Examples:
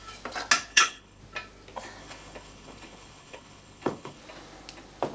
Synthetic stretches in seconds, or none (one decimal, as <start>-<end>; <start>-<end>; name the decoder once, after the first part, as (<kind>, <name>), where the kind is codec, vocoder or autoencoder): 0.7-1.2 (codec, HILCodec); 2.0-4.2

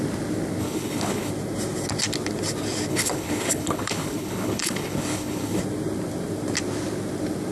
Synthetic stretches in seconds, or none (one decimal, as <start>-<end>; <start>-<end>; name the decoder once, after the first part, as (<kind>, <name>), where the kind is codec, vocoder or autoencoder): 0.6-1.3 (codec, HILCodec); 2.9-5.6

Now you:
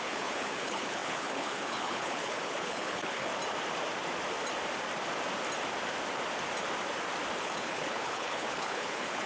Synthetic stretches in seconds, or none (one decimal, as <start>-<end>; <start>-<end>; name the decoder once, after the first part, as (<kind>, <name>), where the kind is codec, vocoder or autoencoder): 0.0-3.3 (codec, HILCodec); 7.4-9.3

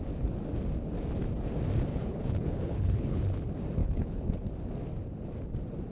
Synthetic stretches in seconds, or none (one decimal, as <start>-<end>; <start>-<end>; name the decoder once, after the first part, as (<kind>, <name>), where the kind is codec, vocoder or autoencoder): 1.9-3.2 (codec, HILCodec); 3.8-4.3

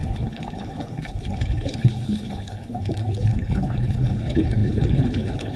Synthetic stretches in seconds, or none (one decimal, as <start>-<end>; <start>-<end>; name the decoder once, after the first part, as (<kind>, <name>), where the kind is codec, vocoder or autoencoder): 0.0-5.6 (codec, HILCodec)